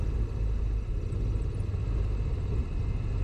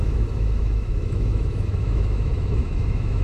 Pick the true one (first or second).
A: first